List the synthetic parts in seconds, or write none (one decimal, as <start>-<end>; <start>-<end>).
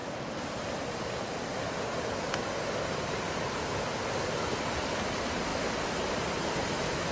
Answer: none